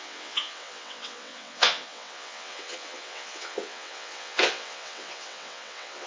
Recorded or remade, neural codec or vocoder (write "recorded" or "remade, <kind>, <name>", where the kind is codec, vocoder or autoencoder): remade, vocoder, WaveNeXt